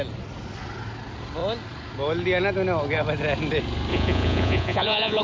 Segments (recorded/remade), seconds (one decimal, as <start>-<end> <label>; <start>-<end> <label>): 0.0-3.9 recorded; 3.9-5.2 remade